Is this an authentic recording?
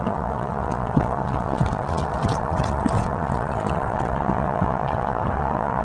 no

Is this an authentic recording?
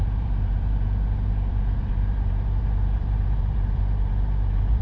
no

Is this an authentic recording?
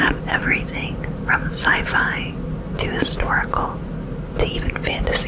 yes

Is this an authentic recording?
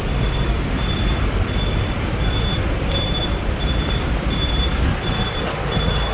no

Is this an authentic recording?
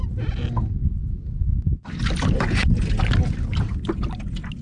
yes